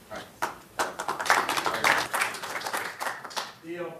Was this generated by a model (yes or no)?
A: yes